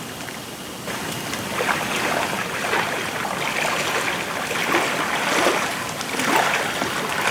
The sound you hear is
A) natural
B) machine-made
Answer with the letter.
A